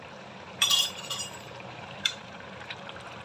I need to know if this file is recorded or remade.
remade